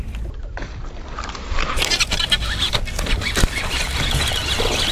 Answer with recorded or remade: recorded